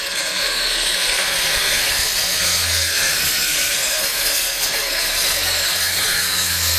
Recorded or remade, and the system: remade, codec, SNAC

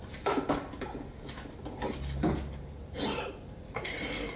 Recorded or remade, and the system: recorded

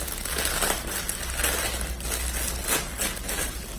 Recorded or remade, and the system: recorded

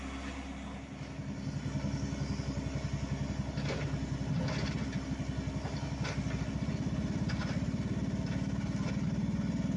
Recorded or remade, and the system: recorded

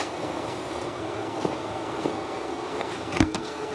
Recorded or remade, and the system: remade, codec, SNAC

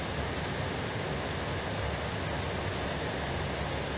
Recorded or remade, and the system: recorded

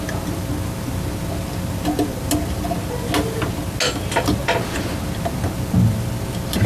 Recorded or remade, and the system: recorded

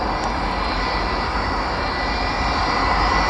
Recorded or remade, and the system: recorded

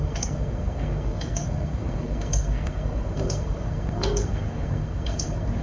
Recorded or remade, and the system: remade, codec, SNAC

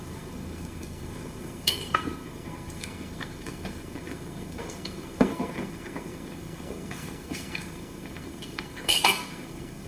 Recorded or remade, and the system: remade, codec, SNAC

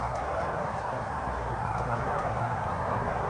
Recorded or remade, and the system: remade, codec, SNAC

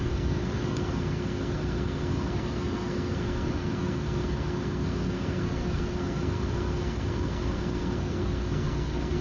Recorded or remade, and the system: remade, codec, SNAC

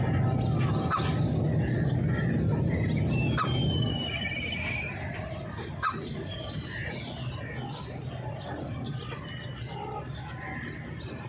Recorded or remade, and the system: recorded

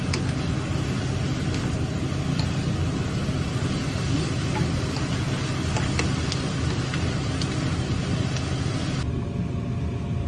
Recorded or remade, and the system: recorded